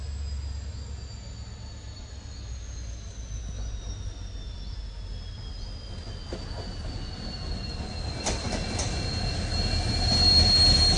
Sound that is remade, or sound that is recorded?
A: recorded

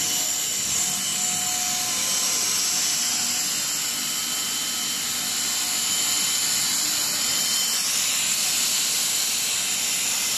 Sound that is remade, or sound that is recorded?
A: recorded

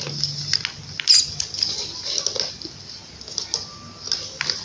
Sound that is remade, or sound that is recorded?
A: recorded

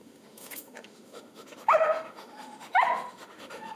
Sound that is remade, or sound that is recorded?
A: remade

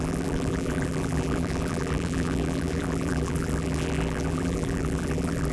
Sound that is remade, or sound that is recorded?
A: remade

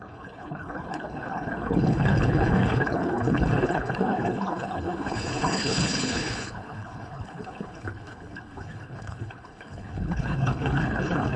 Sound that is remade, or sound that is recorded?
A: remade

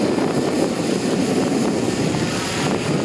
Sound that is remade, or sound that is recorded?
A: recorded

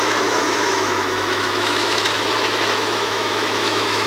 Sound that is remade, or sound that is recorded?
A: remade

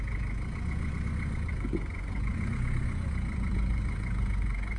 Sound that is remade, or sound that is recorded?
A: remade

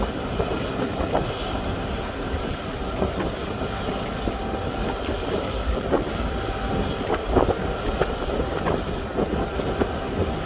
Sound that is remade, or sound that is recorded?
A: recorded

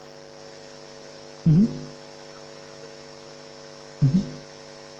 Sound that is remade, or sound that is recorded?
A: remade